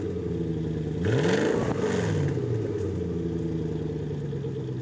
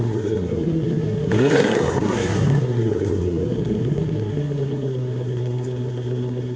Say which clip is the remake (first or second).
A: second